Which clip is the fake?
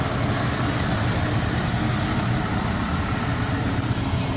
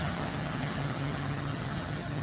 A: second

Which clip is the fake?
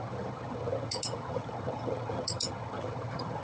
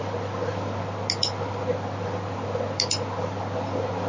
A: first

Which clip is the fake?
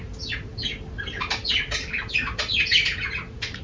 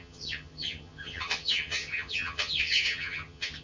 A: second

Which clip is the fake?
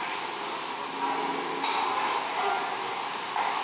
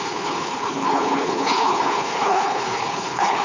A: second